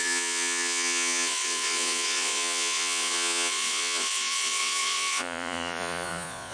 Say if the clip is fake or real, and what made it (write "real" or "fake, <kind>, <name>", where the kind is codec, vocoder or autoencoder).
fake, vocoder, Vocos